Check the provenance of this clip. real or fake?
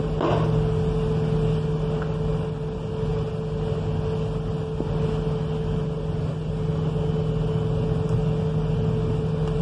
real